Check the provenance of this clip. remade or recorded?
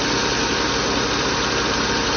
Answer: recorded